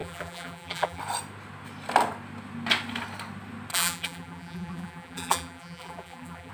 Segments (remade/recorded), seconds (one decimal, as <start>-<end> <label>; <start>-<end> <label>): 0.0-1.0 remade; 1.0-3.7 recorded; 3.7-6.5 remade